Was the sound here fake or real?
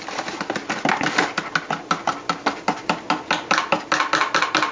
real